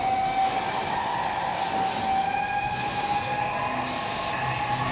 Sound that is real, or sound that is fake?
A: real